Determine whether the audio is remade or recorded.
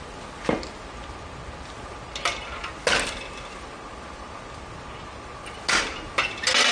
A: recorded